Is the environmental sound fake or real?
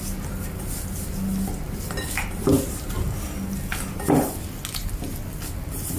real